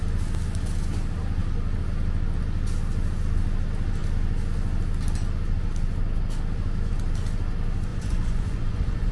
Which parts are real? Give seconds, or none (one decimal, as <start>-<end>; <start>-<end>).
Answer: 0.0-7.9